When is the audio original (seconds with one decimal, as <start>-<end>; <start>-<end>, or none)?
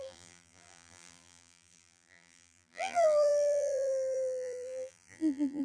none